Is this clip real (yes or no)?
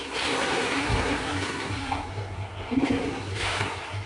no